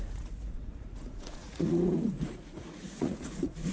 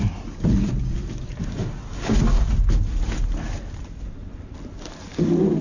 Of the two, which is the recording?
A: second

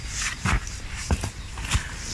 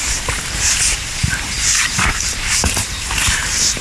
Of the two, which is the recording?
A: first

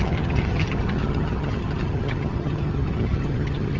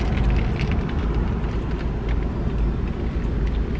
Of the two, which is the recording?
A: second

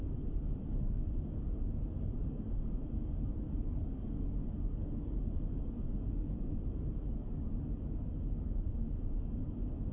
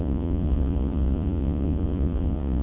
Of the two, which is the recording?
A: first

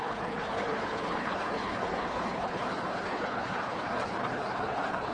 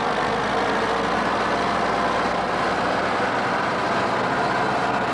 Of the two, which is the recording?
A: second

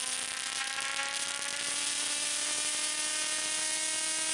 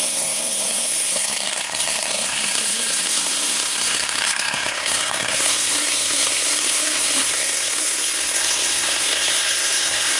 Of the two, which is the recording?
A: first